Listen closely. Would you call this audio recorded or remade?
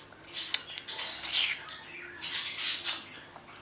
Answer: recorded